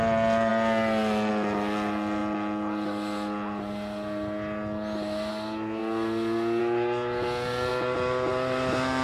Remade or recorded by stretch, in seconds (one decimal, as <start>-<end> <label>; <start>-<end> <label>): 0.0-9.0 recorded